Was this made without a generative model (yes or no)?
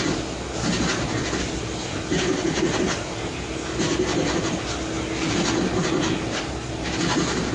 yes